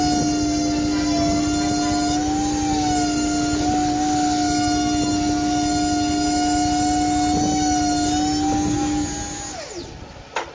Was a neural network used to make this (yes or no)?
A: no